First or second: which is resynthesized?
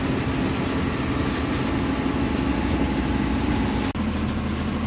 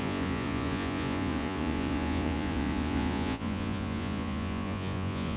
second